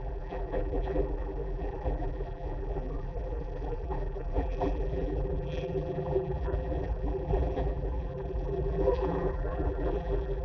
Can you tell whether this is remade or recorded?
remade